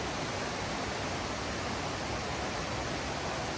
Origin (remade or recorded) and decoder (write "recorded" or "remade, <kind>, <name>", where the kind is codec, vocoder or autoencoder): recorded